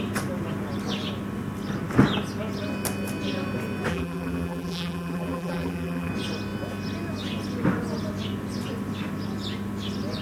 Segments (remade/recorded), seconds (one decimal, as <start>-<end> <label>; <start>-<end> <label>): 0.0-3.9 recorded; 3.9-6.1 remade; 6.1-10.2 recorded